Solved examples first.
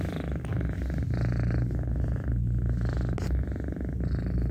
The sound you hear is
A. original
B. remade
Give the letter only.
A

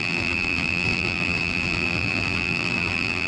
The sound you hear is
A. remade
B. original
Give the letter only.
A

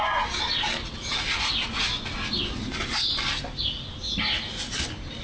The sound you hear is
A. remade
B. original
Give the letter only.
B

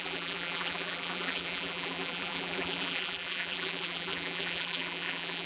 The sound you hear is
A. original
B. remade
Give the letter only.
B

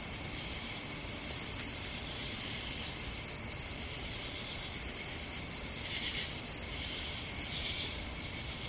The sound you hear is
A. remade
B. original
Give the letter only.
A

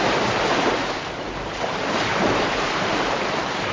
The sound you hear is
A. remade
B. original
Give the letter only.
A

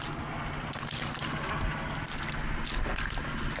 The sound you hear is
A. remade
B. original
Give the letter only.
B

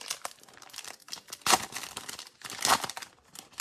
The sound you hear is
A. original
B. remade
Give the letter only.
B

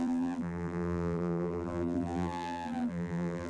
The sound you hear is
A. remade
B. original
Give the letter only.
A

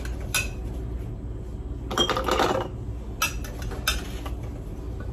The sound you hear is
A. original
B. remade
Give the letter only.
A